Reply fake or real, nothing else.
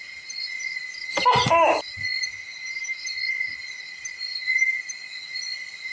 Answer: real